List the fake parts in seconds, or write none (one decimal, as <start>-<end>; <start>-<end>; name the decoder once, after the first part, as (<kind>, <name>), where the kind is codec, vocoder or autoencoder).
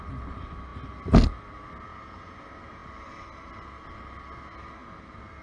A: 2.8-3.5 (vocoder, BigVGAN v2); 4.8-5.4